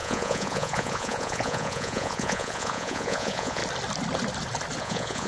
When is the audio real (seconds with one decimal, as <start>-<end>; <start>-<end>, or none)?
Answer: 3.6-4.8